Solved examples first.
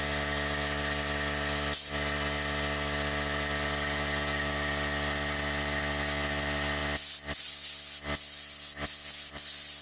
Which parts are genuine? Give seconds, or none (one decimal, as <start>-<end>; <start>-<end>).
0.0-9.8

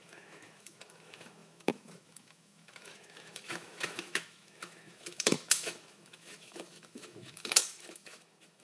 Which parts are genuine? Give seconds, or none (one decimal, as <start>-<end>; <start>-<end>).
none

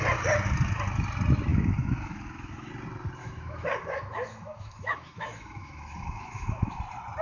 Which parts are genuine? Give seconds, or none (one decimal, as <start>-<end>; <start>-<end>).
0.0-1.5; 2.7-3.2; 6.7-7.2

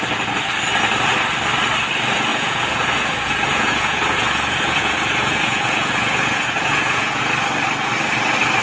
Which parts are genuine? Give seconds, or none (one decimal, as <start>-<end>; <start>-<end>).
0.0-2.3; 7.2-8.6

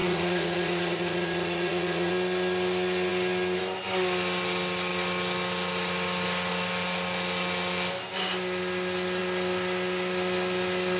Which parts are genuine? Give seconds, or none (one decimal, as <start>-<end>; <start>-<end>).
2.1-11.0

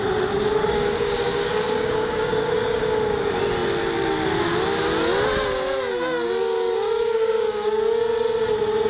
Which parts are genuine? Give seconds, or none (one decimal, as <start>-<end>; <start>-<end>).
0.0-0.6; 2.8-6.4; 7.7-8.9

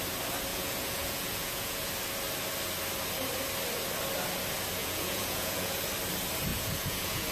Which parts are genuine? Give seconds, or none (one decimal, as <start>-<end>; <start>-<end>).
0.0-0.5; 1.9-4.8; 5.9-6.5

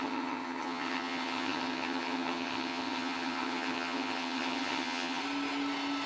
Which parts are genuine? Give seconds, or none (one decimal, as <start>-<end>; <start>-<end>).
5.2-6.1